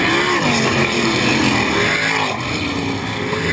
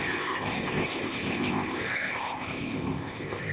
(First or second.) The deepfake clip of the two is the second